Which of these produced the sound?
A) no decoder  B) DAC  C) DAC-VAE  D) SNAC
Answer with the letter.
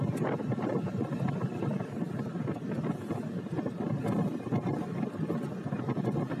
A